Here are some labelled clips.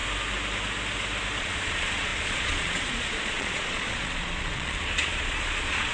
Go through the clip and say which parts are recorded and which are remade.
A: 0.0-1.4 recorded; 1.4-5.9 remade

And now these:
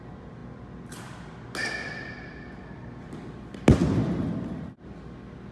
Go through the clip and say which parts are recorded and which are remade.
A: 0.0-5.5 recorded